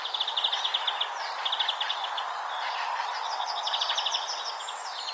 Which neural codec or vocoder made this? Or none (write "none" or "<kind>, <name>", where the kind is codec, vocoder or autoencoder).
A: none